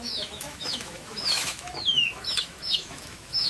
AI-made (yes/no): yes